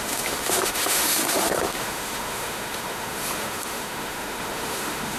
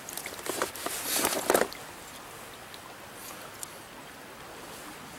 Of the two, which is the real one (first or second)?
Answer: second